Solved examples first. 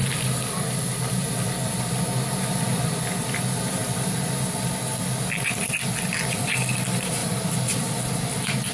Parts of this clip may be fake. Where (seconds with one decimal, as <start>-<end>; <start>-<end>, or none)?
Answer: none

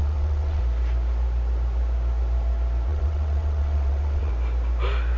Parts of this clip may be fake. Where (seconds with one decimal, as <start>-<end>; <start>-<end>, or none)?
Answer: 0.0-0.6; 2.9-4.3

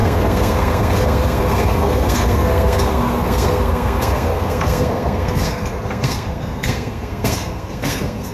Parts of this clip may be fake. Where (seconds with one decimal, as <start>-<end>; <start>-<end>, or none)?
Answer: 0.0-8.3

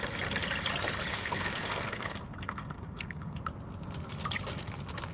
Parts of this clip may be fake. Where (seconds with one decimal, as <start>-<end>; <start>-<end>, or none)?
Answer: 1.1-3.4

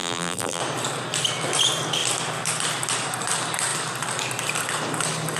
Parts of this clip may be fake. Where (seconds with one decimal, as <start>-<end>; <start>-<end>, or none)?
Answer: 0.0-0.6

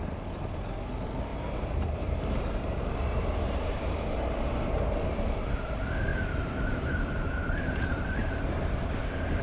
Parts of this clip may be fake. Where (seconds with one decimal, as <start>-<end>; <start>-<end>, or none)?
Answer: 1.3-5.3; 6.1-8.6

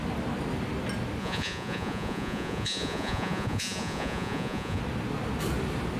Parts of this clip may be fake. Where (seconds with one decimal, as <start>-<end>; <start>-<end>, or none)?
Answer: 1.2-4.8